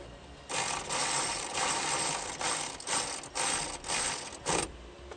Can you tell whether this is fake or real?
real